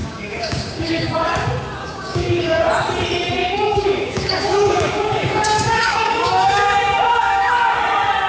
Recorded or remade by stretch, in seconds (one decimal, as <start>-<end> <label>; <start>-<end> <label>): 0.0-1.1 remade; 1.1-1.8 recorded; 1.8-2.6 remade; 2.6-3.4 recorded; 3.4-7.5 remade; 7.5-8.3 recorded